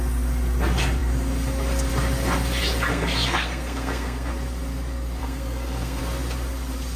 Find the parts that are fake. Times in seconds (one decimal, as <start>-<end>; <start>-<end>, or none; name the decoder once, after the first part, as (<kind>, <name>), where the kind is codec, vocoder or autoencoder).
2.9-4.3 (codec, SNAC); 5.2-6.0